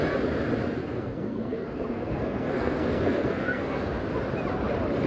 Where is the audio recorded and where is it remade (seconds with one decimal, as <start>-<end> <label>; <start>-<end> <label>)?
0.0-0.8 recorded; 0.8-3.9 remade; 3.9-5.1 recorded